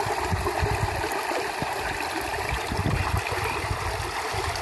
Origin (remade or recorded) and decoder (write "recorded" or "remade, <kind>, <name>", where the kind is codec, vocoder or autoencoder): recorded